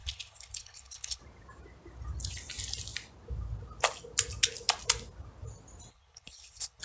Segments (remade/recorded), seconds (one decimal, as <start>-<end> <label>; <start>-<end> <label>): 0.0-1.2 remade; 1.2-5.9 recorded; 5.9-6.8 remade